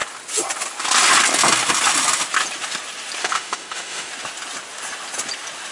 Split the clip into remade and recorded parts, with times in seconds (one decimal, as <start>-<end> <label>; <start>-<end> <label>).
0.0-3.2 recorded; 3.2-4.1 remade; 4.1-5.7 recorded